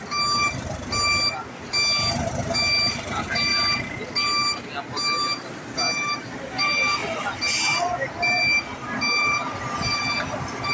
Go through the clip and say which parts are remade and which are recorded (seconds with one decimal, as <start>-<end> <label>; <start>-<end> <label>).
0.0-10.7 recorded